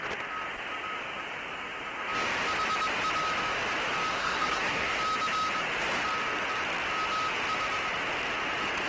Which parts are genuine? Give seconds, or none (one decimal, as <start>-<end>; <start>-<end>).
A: 0.0-4.1; 4.9-8.9